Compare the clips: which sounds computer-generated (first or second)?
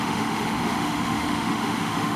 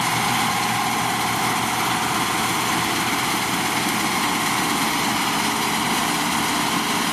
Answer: first